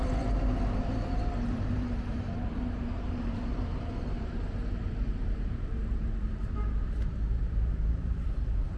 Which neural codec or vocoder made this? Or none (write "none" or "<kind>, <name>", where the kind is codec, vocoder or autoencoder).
vocoder, BigVGAN v2